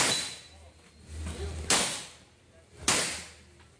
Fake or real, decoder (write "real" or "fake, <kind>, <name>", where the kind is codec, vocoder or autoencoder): fake, vocoder, BigVGAN v2